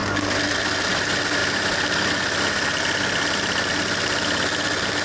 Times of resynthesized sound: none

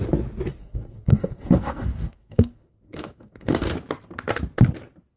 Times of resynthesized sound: 0.6-3.7 (codec, SNAC)

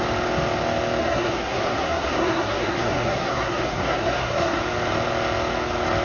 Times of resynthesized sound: 1.0-4.6 (codec, SNAC)

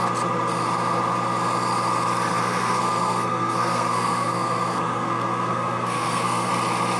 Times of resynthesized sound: 2.3-6.5 (codec, SNAC)

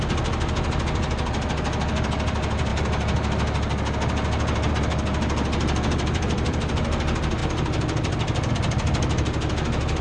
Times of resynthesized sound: none

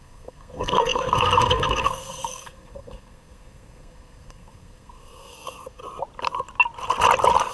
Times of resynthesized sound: 0.0-5.8 (codec, SNAC)

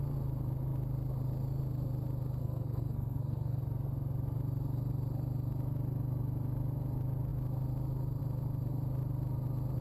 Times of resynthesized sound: 2.4-3.6 (codec, SNAC)

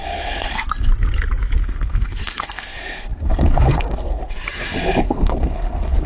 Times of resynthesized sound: 0.0-0.9 (codec, SNAC); 1.6-4.2; 5.0-6.1